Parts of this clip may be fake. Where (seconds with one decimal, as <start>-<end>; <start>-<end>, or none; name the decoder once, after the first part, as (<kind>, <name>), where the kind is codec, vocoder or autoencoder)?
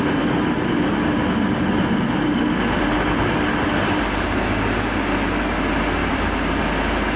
1.7-2.4 (vocoder, BigVGAN v2); 6.0-6.6